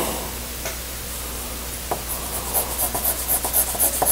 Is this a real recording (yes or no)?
yes